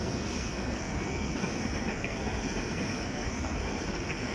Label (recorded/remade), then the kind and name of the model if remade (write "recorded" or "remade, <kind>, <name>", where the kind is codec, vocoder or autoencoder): remade, codec, SNAC